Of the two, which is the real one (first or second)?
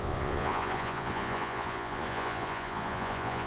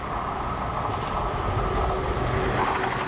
second